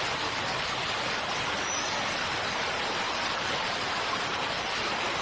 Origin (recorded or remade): remade